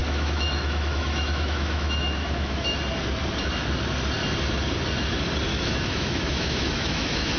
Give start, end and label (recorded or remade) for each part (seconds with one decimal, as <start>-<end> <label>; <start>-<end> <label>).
0.0-2.8 remade; 2.8-5.5 recorded; 5.5-7.4 remade